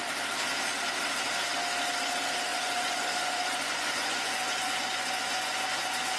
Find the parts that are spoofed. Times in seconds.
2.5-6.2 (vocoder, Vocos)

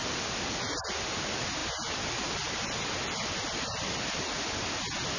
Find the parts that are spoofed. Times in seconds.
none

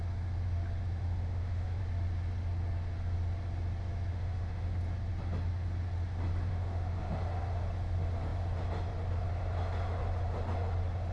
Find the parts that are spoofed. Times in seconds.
1.0-1.8 (autoencoder, DAC-VAE); 4.1-4.8; 6.5-7.1

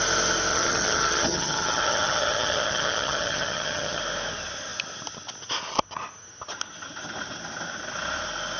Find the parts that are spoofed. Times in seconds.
0.5-4.0 (vocoder, HiFi-GAN)

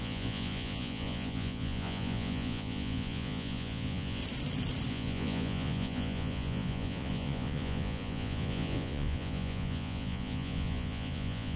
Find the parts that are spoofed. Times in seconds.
0.0-4.2 (vocoder, Vocos); 4.9-11.6

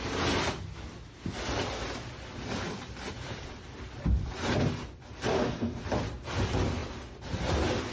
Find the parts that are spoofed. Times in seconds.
5.3-5.8 (autoencoder, DAC-VAE)